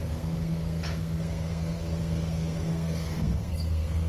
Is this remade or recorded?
remade